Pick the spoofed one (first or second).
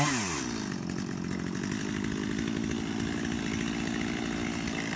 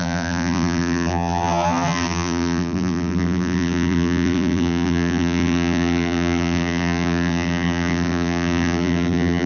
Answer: second